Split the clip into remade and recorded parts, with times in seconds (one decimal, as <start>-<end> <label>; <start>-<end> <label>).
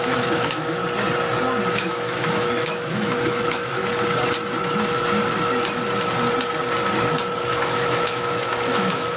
0.0-0.8 remade; 0.8-1.7 recorded; 1.7-3.8 remade; 3.8-7.5 recorded; 7.5-9.2 remade